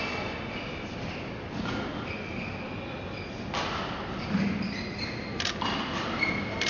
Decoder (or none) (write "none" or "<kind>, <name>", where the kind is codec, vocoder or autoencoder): none